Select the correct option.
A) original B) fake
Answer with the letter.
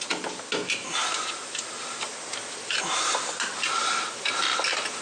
A